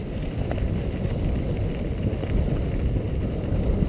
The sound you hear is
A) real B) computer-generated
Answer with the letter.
A